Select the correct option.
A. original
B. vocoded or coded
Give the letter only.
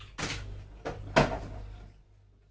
A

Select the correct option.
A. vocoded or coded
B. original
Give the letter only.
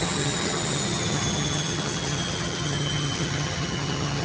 A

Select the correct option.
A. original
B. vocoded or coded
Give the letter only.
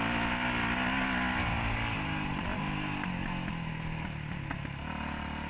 A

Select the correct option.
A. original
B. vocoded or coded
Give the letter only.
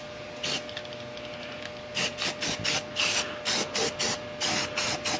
A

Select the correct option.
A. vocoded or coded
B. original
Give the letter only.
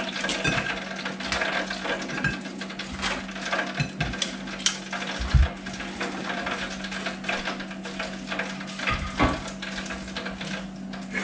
B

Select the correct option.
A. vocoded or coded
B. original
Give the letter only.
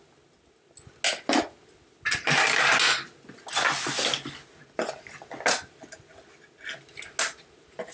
B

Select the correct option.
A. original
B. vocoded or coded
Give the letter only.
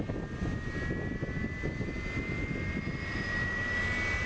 A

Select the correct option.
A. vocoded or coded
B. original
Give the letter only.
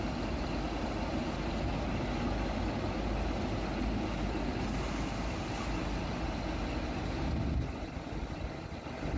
B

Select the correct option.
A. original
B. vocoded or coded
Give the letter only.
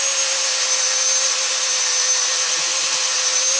A